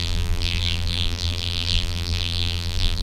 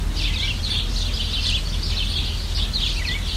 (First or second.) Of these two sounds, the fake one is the first